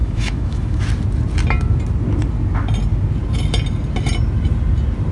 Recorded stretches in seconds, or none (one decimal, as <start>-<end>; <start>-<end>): 0.8-5.1